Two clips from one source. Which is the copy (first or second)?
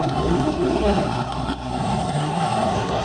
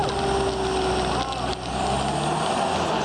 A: first